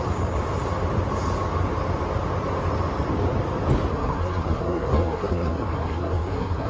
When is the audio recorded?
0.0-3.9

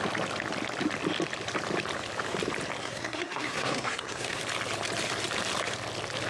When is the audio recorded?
0.0-2.8; 4.4-6.3

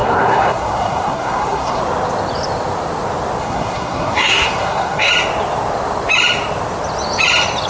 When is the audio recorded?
1.8-3.4; 5.1-7.7

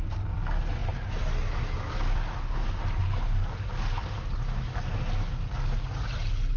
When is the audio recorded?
0.0-6.6

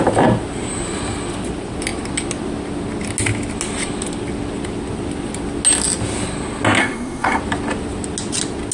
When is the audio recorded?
0.0-6.8; 7.4-8.7

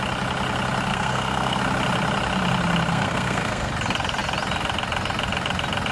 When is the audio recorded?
0.0-0.9; 1.6-2.9; 3.7-5.9